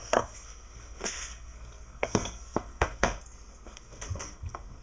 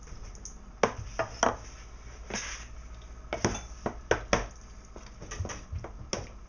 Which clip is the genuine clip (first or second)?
second